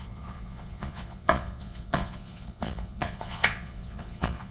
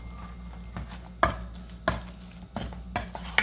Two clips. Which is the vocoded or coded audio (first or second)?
first